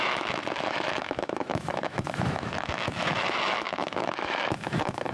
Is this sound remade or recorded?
remade